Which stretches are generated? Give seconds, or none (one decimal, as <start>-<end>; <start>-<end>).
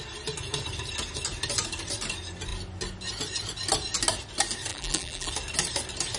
4.7-5.3